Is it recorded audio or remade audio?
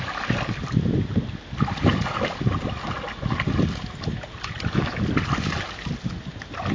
recorded